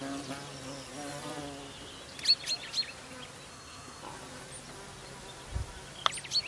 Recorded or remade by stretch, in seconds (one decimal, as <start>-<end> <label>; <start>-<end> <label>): 0.0-3.5 recorded; 3.5-4.0 remade; 4.0-6.5 recorded